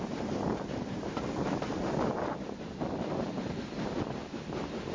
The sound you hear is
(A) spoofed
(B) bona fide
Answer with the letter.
B